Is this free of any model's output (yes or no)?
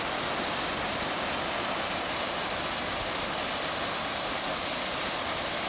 yes